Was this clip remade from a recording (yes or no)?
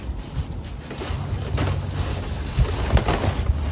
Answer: no